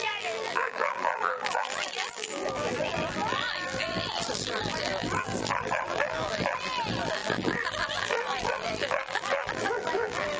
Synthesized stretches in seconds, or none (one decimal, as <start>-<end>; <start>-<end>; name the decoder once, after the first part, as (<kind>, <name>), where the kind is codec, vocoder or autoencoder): 0.0-10.4 (vocoder, BigVGAN v2)